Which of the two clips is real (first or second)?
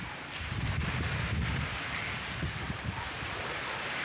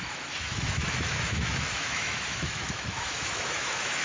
first